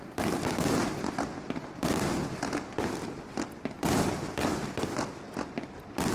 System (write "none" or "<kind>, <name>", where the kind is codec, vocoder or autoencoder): none